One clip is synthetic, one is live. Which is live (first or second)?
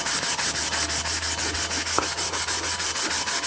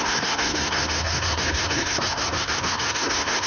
first